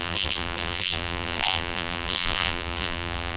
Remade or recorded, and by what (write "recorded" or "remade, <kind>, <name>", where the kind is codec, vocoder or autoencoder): remade, vocoder, BigVGAN v2